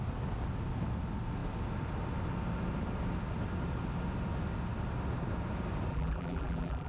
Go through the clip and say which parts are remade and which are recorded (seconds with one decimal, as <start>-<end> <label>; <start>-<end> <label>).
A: 0.0-5.9 recorded; 5.9-6.9 remade